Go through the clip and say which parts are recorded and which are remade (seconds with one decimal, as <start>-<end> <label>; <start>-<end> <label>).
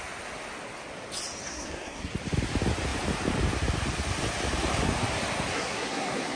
0.0-1.5 recorded; 1.5-2.1 remade; 2.1-5.5 recorded; 5.5-6.4 remade